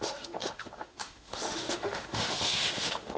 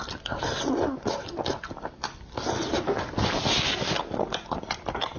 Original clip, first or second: second